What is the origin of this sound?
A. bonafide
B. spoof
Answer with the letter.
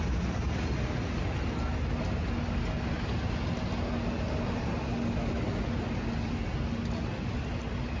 A